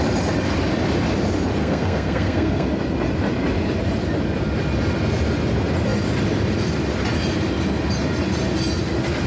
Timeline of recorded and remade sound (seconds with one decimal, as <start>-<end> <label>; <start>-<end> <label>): 0.0-1.6 recorded; 1.6-2.8 remade; 2.8-9.3 recorded